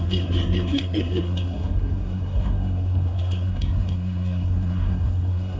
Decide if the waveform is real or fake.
fake